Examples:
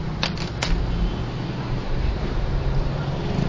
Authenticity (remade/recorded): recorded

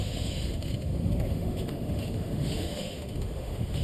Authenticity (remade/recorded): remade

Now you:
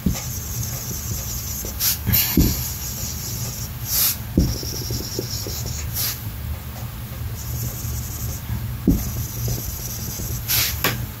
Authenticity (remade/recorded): recorded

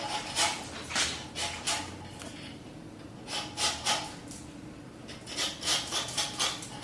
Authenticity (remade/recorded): recorded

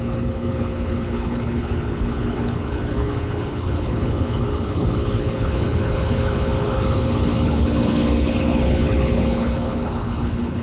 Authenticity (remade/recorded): remade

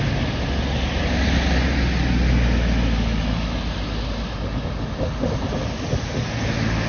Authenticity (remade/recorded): recorded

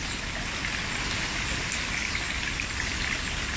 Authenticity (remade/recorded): recorded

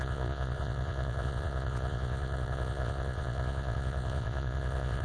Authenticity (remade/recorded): remade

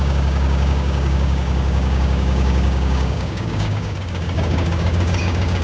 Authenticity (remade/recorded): remade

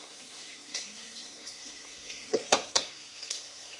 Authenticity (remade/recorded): remade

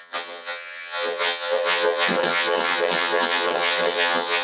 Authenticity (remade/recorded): remade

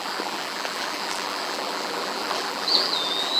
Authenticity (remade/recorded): remade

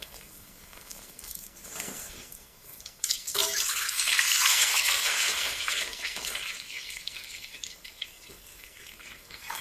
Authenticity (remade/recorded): remade